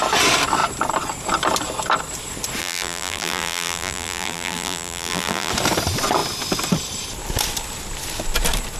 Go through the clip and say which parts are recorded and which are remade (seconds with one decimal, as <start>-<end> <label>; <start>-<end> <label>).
0.0-2.6 recorded; 2.6-5.5 remade; 5.5-8.8 recorded